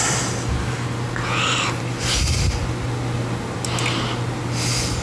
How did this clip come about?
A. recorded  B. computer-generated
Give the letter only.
A